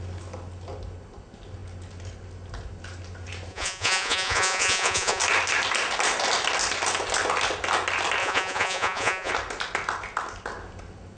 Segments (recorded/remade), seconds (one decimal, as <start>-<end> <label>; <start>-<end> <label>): 0.0-3.5 recorded; 3.5-5.2 remade; 5.2-8.2 recorded; 8.2-9.3 remade; 9.3-11.2 recorded

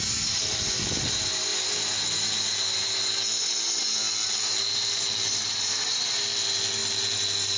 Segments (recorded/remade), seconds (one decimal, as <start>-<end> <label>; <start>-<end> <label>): 0.0-7.6 recorded

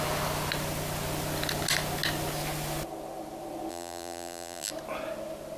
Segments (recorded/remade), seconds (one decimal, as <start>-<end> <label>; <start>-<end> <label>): 0.0-3.7 recorded; 3.7-4.7 remade; 4.7-5.6 recorded

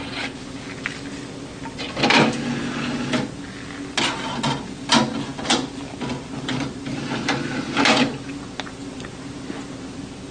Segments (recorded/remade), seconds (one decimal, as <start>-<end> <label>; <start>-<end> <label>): 0.0-10.3 recorded

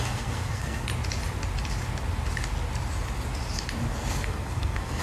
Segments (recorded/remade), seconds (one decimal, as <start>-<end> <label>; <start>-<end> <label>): 0.0-0.9 remade; 0.9-3.9 recorded; 3.9-5.0 remade

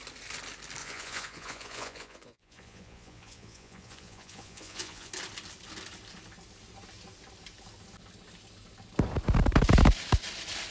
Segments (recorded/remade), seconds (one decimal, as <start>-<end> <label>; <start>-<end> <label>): 0.0-0.8 recorded; 0.8-5.1 remade; 5.1-10.7 recorded

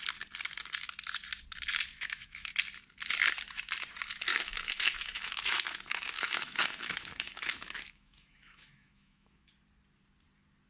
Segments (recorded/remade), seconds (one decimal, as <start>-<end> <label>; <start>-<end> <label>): 0.0-1.9 recorded; 1.9-2.5 remade; 2.5-4.3 recorded; 4.3-9.5 remade; 9.5-10.7 recorded